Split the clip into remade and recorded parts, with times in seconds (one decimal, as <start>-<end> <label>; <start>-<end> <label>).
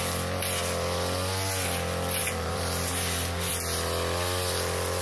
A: 0.0-2.2 recorded; 2.2-3.5 remade; 3.5-5.0 recorded